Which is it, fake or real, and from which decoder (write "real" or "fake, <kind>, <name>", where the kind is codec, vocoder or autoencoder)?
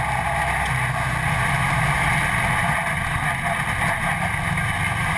real